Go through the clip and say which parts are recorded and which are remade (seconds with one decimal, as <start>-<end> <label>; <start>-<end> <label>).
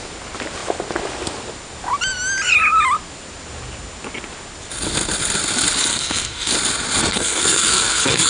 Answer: 0.0-5.9 recorded; 5.9-6.5 remade; 6.5-7.1 recorded; 7.1-8.3 remade